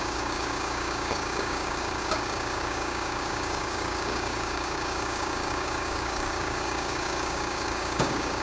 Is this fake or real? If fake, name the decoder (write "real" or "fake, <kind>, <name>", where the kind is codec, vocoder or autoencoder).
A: fake, codec, DAC